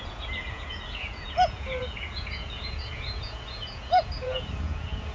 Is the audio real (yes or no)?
no